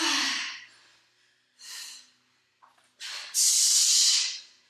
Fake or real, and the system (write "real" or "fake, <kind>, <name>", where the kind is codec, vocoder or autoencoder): real